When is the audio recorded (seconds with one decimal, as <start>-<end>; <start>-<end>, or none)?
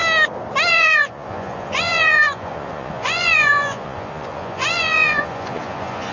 0.0-0.7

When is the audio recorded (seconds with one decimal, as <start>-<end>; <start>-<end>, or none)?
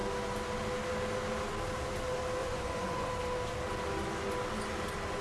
0.0-2.4; 3.1-5.2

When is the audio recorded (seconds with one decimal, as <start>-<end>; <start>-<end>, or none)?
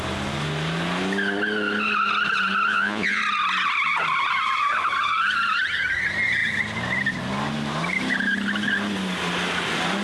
0.0-2.7; 3.2-10.0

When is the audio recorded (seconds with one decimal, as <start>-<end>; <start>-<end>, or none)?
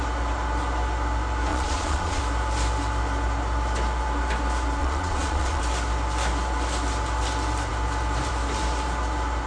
0.0-1.5; 2.2-4.8; 5.6-9.5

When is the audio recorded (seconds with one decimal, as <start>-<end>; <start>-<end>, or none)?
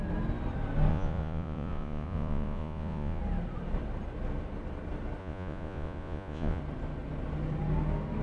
0.0-0.9; 3.2-5.2; 6.6-8.2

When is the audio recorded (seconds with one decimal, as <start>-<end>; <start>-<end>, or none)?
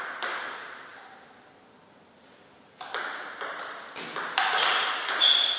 0.0-5.6